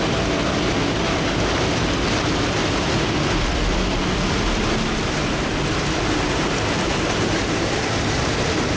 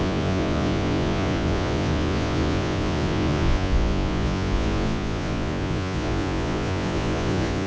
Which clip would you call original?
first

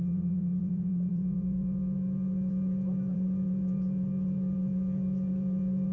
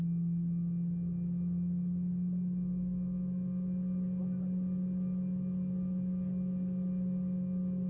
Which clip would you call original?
second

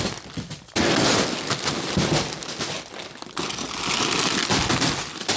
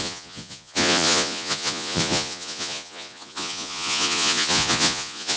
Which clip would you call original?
first